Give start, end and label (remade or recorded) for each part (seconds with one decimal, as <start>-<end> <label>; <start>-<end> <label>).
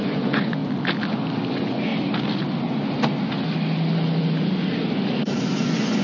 0.0-0.6 remade; 0.6-1.5 recorded; 1.5-1.9 remade; 1.9-5.4 recorded; 5.4-6.0 remade